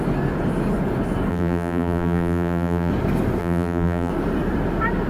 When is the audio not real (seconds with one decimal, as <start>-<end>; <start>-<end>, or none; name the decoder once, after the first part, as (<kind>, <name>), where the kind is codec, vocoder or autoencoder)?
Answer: 1.3-2.9 (vocoder, BigVGAN v2); 3.4-4.1